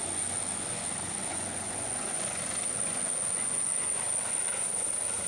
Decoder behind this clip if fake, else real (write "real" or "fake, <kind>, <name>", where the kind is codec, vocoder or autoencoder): fake, vocoder, Vocos